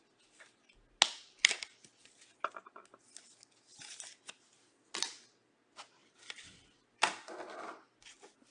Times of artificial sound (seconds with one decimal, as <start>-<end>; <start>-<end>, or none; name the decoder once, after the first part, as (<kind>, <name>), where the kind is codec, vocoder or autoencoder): 6.0-7.7 (vocoder, BigVGAN v2)